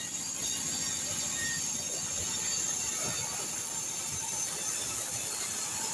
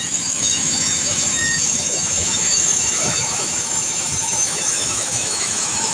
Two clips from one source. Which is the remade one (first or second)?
second